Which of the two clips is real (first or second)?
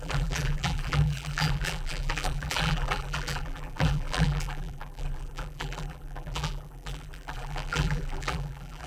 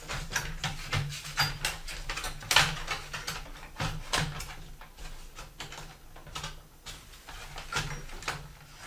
second